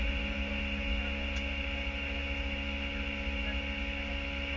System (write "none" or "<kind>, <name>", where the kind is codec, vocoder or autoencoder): none